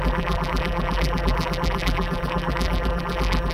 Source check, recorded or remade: remade